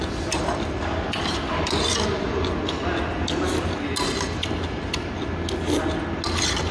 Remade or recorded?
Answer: recorded